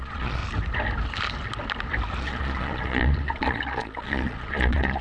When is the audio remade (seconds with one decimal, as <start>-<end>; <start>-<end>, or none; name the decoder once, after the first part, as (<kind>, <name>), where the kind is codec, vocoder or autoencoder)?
0.0-0.4 (vocoder, Vocos); 2.2-5.0